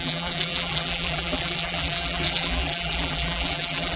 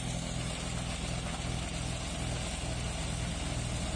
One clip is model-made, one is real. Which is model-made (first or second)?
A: first